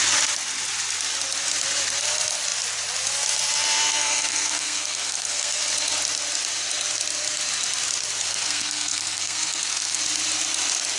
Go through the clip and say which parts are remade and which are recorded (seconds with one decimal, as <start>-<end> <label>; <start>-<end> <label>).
0.0-3.9 recorded; 3.9-5.6 remade; 5.6-8.3 recorded; 8.3-10.0 remade; 10.0-11.0 recorded